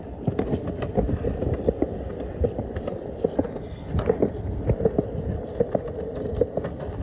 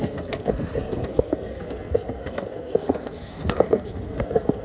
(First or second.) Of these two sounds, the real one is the first